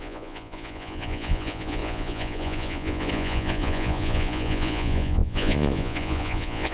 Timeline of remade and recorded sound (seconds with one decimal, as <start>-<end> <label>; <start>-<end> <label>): 0.0-6.7 remade